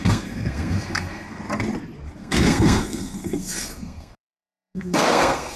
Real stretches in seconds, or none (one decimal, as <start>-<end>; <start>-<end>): 1.4-2.2